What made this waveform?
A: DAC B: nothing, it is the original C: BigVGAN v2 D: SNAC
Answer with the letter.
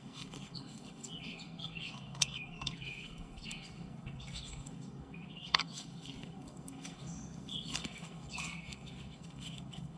D